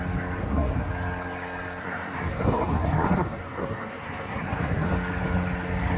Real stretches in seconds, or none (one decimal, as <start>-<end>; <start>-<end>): 0.0-0.4; 0.9-1.8; 4.9-6.0